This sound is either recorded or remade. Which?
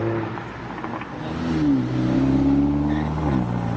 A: recorded